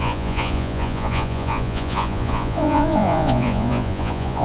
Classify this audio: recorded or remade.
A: remade